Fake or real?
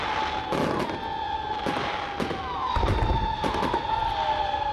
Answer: real